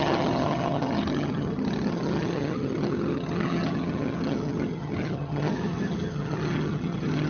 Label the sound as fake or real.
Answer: fake